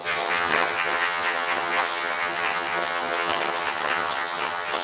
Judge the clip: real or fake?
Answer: fake